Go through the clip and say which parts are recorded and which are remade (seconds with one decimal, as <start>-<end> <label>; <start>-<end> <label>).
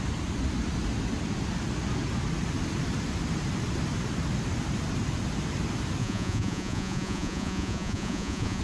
0.0-6.0 recorded; 6.0-8.6 remade